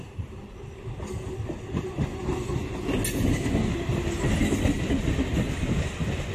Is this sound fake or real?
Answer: real